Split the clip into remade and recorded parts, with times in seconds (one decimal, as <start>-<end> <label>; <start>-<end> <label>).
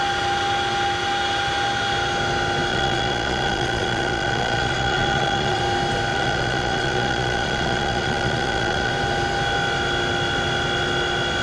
0.0-2.7 recorded; 2.7-5.6 remade; 5.6-6.1 recorded; 6.1-8.9 remade; 8.9-11.4 recorded